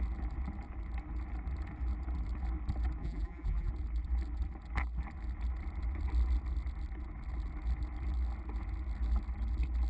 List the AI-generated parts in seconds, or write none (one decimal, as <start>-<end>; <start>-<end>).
3.0-3.7